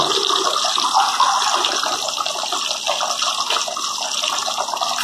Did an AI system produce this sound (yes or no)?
no